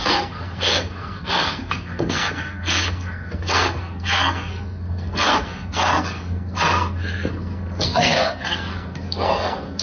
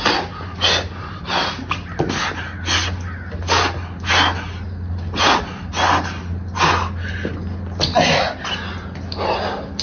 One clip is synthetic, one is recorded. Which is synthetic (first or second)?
first